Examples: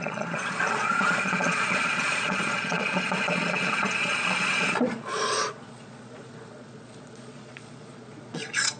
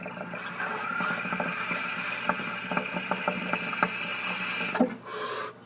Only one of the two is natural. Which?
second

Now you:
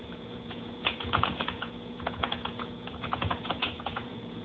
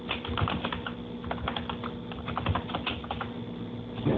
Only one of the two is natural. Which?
second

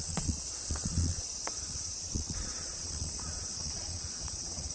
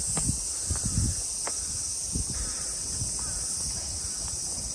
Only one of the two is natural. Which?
second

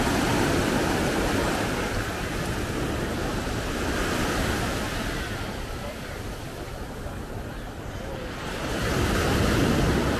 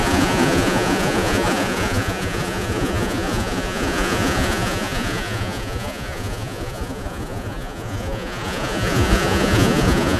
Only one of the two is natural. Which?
first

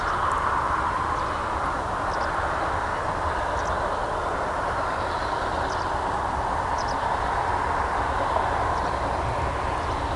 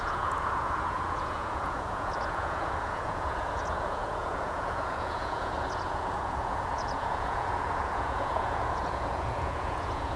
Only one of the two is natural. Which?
first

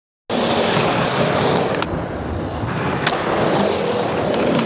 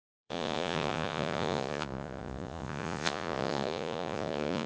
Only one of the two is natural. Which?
first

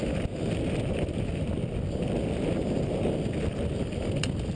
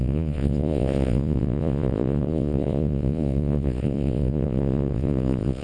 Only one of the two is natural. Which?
first